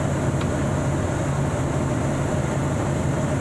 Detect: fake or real real